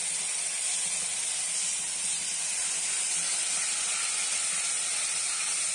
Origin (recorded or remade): recorded